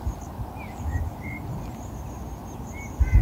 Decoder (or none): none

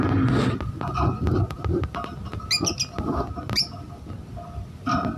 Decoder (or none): none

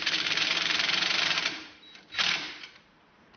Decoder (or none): vocoder, BigVGAN v2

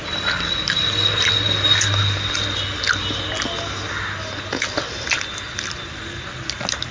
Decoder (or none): none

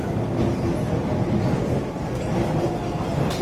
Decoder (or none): none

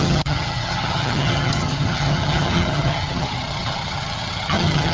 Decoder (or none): vocoder, HiFi-GAN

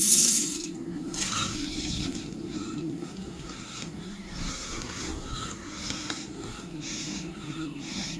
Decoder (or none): codec, SNAC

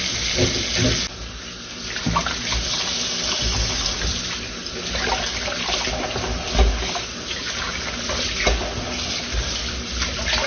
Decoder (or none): none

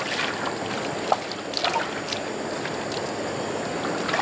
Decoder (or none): none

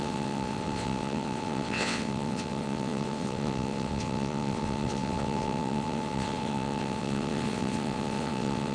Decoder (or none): vocoder, WaveNeXt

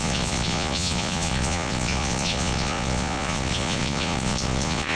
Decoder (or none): vocoder, Vocos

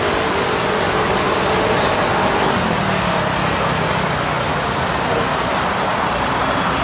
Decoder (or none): none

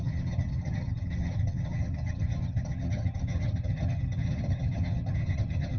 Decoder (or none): vocoder, HiFi-GAN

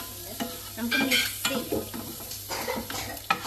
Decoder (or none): none